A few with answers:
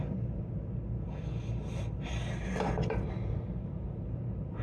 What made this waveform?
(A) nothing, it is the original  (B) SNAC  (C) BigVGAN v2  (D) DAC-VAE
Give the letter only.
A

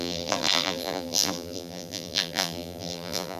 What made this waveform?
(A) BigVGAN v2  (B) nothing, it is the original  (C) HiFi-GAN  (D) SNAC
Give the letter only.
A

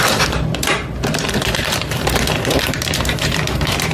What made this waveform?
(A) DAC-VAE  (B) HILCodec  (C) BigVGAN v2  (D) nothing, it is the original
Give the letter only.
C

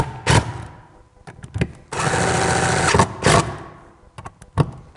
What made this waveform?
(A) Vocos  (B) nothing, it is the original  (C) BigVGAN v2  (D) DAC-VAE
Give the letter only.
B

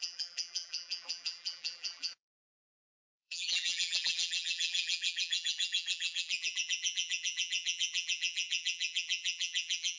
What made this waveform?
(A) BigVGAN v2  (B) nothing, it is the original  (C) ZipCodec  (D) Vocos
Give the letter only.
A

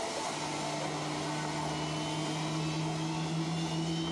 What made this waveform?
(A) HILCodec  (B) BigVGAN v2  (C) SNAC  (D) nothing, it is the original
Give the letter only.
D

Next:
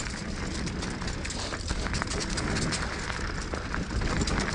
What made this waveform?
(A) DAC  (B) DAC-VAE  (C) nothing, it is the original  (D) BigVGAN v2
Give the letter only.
C